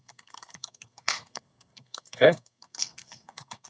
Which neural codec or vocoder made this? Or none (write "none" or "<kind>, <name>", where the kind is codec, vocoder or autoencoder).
codec, SNAC